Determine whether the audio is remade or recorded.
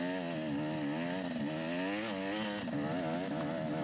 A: recorded